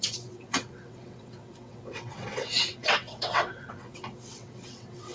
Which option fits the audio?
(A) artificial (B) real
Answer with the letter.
A